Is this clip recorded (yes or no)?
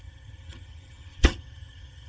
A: no